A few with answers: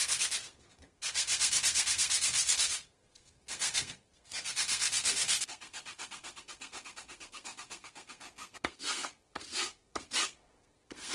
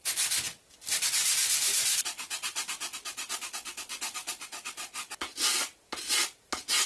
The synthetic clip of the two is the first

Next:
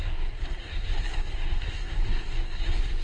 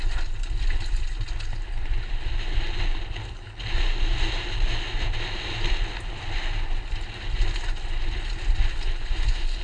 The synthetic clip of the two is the first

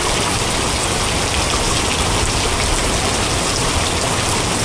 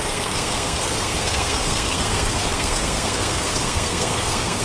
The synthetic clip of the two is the second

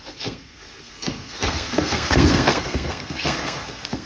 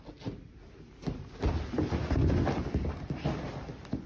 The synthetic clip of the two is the first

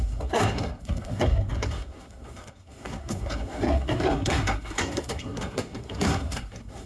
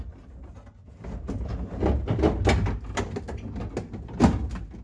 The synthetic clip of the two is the first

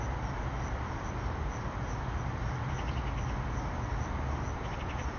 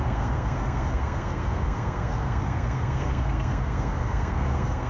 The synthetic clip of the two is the second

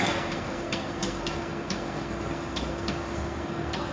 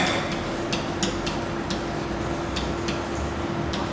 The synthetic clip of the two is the first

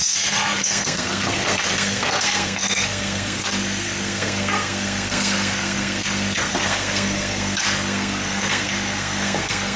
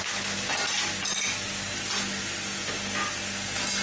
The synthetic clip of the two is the first